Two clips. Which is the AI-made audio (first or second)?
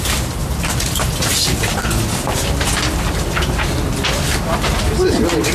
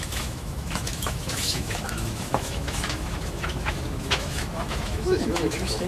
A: second